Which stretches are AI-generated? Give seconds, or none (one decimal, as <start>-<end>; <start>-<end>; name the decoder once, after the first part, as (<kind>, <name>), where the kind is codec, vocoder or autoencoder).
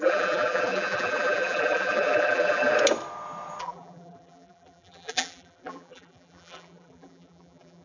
0.0-2.7 (vocoder, BigVGAN v2); 3.6-7.8